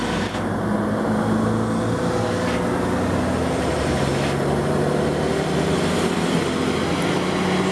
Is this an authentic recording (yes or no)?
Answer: yes